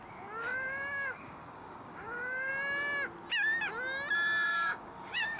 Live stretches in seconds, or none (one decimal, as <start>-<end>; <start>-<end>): 0.0-0.5; 2.5-4.5